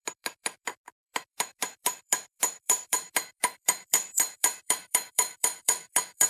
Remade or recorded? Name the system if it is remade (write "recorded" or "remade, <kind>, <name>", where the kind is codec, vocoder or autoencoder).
remade, vocoder, BigVGAN v2